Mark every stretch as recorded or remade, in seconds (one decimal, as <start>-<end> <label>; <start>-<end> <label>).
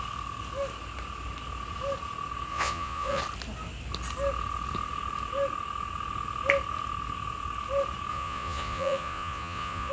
0.0-2.5 recorded; 2.5-3.2 remade; 3.2-8.1 recorded; 8.1-9.9 remade